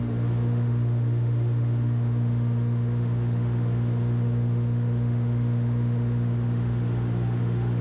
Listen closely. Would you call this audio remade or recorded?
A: remade